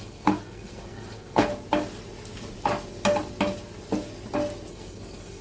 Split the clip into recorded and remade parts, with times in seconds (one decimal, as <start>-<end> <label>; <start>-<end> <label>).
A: 0.0-1.5 remade; 1.5-4.7 recorded; 4.7-5.4 remade